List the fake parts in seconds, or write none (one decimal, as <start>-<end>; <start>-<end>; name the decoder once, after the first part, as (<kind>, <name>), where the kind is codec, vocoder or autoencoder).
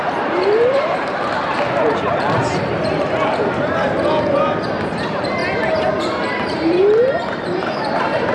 0.0-2.4 (vocoder, BigVGAN v2); 4.7-5.4; 6.0-8.3